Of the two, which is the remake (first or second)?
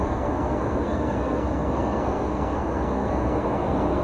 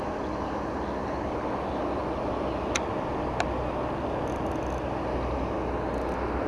first